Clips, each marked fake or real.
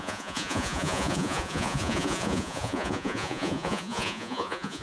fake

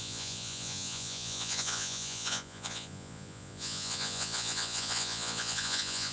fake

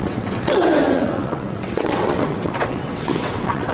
fake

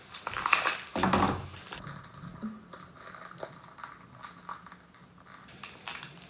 real